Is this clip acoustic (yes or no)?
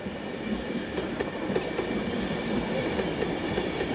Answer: yes